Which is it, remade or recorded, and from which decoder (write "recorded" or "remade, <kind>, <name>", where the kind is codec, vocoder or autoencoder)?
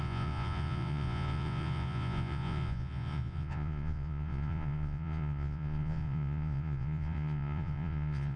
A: remade, vocoder, Vocos